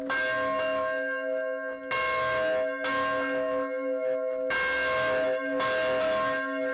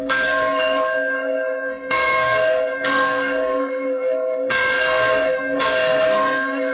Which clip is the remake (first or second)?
second